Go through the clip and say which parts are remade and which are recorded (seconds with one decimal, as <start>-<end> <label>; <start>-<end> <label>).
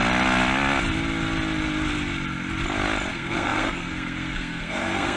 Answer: 0.0-3.1 recorded; 3.1-5.2 remade